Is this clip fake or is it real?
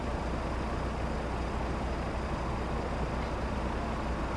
real